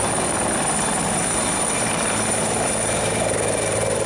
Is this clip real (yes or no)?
no